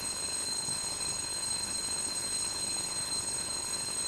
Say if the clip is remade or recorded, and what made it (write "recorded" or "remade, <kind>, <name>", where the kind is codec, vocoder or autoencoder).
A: remade, codec, HILCodec